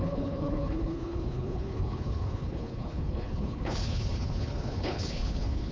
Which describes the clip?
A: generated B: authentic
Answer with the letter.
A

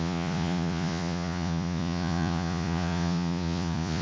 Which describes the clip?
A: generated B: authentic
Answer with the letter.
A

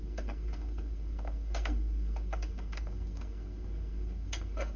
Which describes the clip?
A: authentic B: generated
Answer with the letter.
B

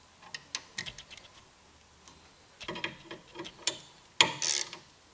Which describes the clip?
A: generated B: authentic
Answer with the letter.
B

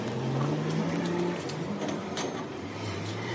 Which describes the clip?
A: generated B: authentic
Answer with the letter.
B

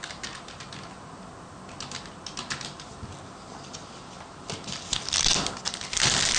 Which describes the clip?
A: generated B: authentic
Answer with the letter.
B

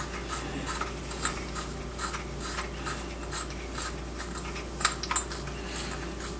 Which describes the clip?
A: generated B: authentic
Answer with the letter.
B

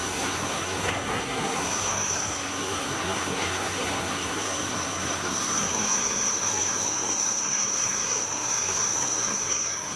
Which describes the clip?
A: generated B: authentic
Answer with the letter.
A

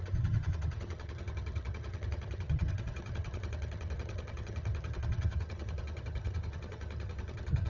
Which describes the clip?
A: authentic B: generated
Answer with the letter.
B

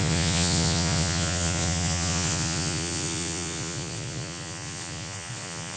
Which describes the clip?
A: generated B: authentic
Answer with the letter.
A